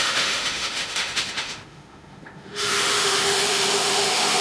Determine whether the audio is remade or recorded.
remade